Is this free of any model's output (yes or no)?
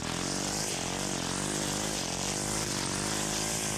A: yes